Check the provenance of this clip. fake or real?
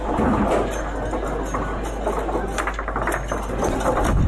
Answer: real